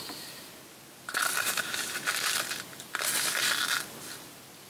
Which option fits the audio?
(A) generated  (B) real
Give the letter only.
B